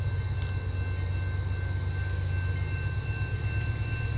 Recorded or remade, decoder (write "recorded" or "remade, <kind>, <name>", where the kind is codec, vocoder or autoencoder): recorded